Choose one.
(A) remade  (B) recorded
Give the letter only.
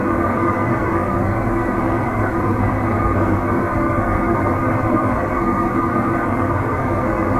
A